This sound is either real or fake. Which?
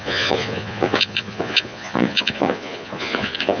fake